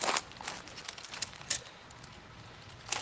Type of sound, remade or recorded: recorded